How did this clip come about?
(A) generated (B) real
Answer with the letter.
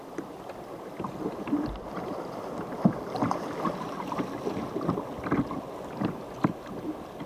B